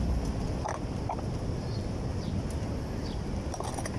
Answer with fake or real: real